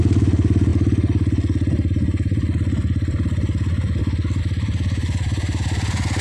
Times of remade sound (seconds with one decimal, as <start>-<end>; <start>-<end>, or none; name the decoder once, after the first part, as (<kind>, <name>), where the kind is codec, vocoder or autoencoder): none